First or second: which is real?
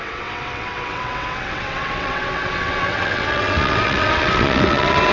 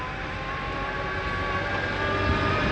second